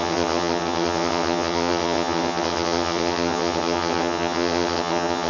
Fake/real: fake